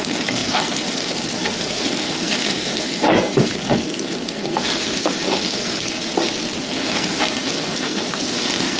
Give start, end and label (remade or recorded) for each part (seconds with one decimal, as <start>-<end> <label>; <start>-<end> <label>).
0.0-6.1 remade; 6.1-6.6 recorded; 6.6-8.8 remade